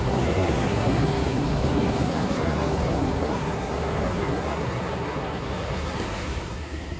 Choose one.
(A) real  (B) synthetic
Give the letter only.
B